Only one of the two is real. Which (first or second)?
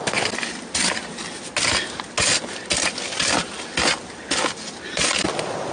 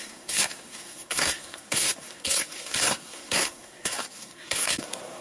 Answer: first